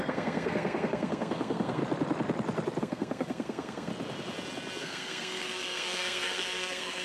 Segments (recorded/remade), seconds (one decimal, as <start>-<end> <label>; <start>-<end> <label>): 0.0-1.8 remade; 1.8-2.8 recorded; 2.8-3.9 remade; 3.9-4.8 recorded; 4.8-7.0 remade

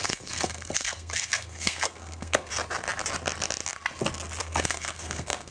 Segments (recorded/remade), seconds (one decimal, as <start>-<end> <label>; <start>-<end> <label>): 0.0-2.5 remade; 2.5-4.4 recorded; 4.4-5.5 remade

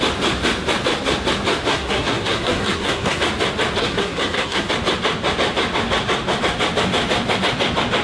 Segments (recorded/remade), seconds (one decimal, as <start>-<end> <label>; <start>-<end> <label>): 0.0-1.7 recorded; 1.7-3.2 remade; 3.2-3.8 recorded; 3.8-4.7 remade; 4.7-8.0 recorded

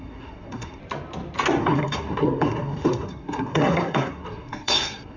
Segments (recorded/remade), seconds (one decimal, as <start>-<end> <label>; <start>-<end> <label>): 0.0-0.8 remade; 0.8-1.6 recorded; 1.6-5.2 remade

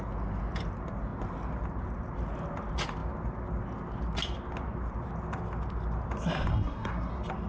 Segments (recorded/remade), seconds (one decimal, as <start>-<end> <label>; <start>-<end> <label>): 0.0-6.5 recorded; 6.5-7.1 remade; 7.1-7.5 recorded

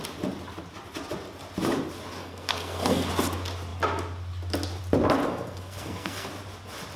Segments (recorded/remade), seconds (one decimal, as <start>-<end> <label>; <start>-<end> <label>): 0.0-2.2 recorded; 2.2-3.1 remade; 3.1-5.2 recorded; 5.2-6.3 remade; 6.3-7.0 recorded